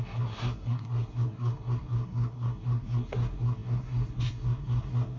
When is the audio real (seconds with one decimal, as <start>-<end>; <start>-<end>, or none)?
none